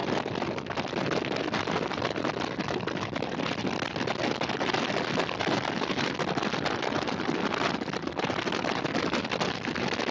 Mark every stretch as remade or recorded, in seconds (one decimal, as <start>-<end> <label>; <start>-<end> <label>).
0.0-10.1 recorded